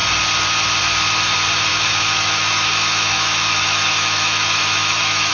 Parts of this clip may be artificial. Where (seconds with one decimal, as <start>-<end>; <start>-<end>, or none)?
1.7-5.3